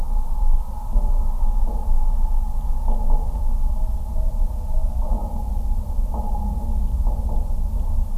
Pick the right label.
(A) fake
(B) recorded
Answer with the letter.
B